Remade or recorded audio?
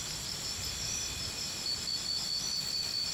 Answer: recorded